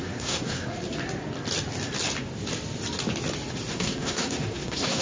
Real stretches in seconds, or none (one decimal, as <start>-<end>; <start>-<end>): 0.7-3.7